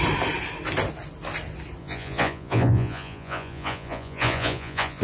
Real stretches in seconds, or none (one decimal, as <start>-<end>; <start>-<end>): 0.0-1.8